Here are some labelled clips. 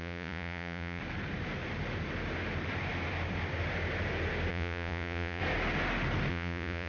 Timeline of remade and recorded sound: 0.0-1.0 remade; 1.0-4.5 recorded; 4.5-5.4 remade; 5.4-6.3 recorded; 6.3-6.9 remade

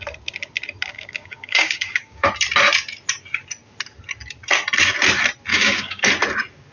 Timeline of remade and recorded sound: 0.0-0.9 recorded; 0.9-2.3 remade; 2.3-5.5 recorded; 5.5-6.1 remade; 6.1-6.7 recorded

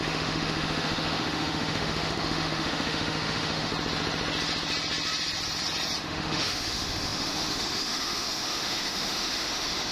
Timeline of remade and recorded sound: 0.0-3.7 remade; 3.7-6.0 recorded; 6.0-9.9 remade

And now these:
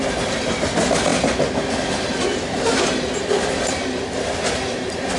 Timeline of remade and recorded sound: 0.0-5.2 recorded

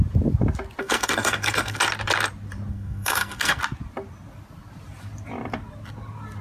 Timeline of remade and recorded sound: 0.0-0.8 recorded; 0.8-1.8 remade; 1.8-2.7 recorded; 2.7-3.6 remade; 3.6-6.4 recorded

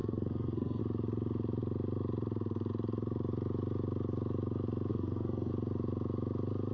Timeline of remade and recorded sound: 0.0-0.8 remade; 0.8-4.9 recorded; 4.9-5.5 remade; 5.5-6.7 recorded

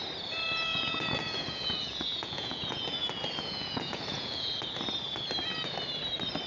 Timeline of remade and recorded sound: 0.0-0.7 recorded; 0.7-4.6 remade; 4.6-6.5 recorded